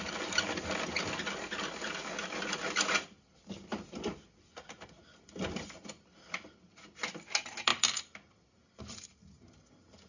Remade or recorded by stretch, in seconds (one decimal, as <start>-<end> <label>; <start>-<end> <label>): 0.0-10.1 recorded